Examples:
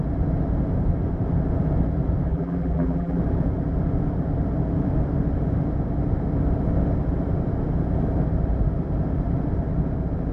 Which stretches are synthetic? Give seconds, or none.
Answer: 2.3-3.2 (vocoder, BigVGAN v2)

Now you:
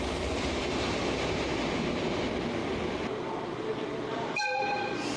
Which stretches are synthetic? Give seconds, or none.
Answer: 0.0-5.2 (vocoder, BigVGAN v2)